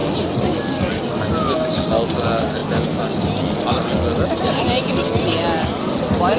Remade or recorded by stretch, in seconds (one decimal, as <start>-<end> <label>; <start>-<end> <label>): 0.0-6.4 recorded